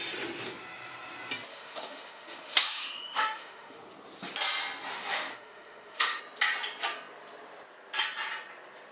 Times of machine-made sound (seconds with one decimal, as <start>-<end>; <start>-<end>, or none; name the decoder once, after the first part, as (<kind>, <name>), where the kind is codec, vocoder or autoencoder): 1.5-3.9 (autoencoder, DAC-VAE); 4.9-6.2